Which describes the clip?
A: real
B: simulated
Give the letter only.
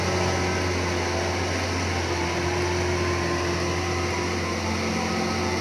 A